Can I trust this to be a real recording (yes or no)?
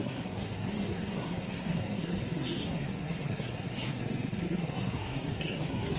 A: no